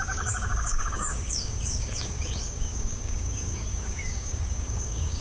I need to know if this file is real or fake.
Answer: fake